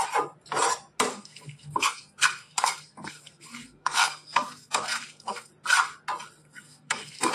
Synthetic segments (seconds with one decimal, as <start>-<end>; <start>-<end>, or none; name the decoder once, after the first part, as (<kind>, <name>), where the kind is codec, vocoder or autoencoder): 1.1-5.5 (codec, SNAC); 6.4-7.3